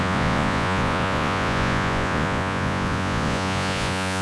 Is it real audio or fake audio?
fake